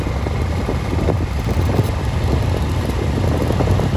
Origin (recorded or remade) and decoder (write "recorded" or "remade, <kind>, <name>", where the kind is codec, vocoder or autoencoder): recorded